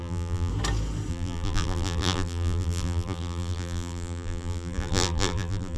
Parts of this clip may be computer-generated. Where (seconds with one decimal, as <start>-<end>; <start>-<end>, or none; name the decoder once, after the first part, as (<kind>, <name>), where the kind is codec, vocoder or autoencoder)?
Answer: 0.0-0.5 (vocoder, BigVGAN v2); 1.1-5.8